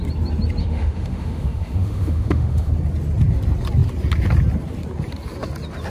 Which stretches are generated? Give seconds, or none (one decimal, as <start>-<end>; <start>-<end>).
0.6-2.7